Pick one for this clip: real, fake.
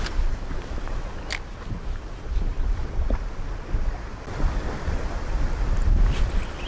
real